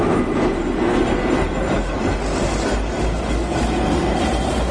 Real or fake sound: real